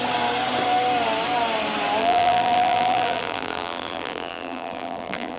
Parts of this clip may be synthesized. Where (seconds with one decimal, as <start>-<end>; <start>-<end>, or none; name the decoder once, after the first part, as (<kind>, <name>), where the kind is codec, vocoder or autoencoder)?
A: 2.0-5.4 (vocoder, BigVGAN v2)

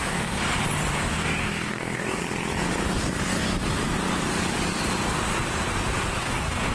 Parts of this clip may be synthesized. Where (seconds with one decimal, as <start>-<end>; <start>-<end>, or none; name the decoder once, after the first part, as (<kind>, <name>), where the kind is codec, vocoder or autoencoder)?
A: 0.0-0.4 (codec, DAC); 1.1-2.2; 6.2-6.7

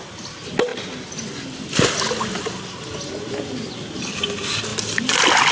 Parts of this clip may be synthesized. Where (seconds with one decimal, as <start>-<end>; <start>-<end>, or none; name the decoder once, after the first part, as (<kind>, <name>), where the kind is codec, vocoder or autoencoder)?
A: none

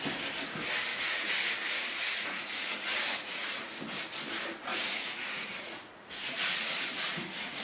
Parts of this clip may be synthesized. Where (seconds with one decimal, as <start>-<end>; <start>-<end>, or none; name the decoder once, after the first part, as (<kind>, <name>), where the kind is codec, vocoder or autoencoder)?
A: 0.9-3.7 (vocoder, Vocos); 4.7-7.6

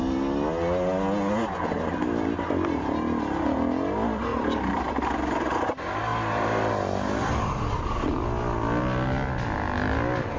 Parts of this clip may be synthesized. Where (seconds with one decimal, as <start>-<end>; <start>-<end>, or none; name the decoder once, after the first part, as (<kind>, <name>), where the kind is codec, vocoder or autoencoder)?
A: 4.3-4.9 (vocoder, BigVGAN v2); 6.1-6.7

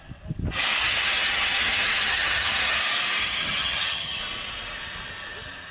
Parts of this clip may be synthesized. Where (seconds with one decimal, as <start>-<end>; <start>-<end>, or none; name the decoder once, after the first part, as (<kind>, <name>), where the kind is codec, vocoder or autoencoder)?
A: 0.8-2.8 (vocoder, HiFi-GAN); 3.2-4.2

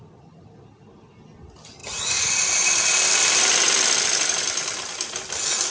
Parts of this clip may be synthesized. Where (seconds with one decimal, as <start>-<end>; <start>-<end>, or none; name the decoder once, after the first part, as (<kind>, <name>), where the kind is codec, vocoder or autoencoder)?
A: 1.8-4.9 (vocoder, BigVGAN v2)